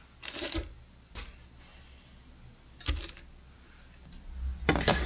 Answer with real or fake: real